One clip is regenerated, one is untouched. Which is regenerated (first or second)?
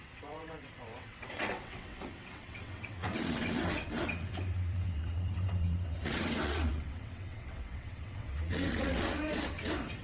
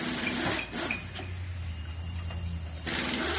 first